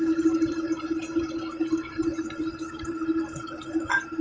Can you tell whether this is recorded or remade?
recorded